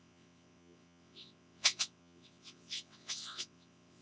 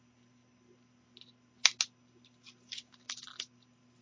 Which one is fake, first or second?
first